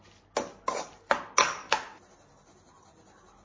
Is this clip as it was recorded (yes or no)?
yes